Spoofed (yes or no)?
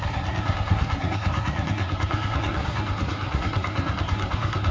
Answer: yes